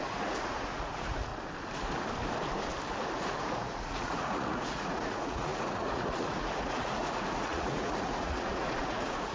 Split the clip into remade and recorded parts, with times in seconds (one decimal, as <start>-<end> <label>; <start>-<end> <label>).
0.0-1.3 remade; 1.3-3.1 recorded; 3.1-9.3 remade

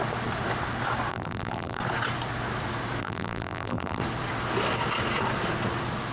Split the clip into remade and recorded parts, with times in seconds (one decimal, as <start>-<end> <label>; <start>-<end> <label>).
0.0-1.1 recorded; 1.1-1.8 remade; 1.8-3.0 recorded; 3.0-4.0 remade; 4.0-6.1 recorded

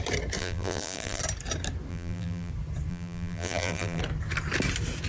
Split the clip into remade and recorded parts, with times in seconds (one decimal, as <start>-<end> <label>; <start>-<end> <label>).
0.0-0.4 recorded; 0.4-1.2 remade; 1.2-1.9 recorded; 1.9-2.5 remade; 2.5-2.9 recorded; 2.9-4.0 remade; 4.0-5.1 recorded

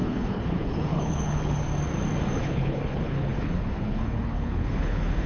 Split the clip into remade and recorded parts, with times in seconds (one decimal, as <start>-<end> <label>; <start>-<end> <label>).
0.0-1.7 remade; 1.7-2.4 recorded; 2.4-5.3 remade

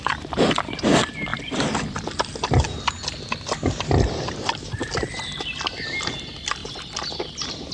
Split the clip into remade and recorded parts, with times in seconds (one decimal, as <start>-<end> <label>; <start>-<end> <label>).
0.0-1.3 recorded; 1.3-4.9 remade; 4.9-6.6 recorded; 6.6-7.7 remade

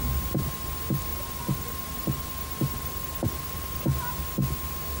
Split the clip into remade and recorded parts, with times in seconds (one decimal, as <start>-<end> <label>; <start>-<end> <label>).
0.0-1.1 recorded; 1.1-4.1 remade; 4.1-5.0 recorded